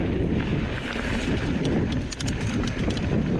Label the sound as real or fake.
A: real